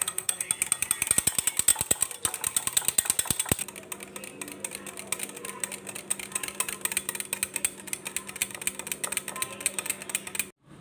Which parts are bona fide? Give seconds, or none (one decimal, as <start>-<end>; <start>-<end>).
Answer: 0.5-10.8

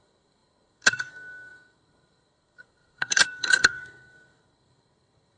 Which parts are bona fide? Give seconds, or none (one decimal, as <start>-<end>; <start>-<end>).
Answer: none